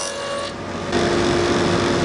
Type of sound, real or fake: real